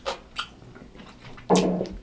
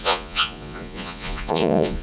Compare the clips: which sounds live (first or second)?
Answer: first